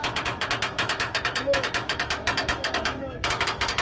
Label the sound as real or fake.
fake